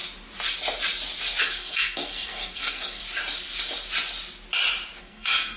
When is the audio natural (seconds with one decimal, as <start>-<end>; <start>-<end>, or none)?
0.0-1.4; 3.0-5.0